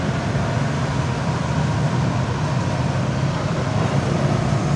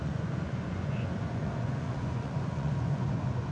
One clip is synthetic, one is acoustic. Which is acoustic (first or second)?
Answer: first